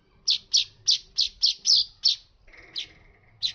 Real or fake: real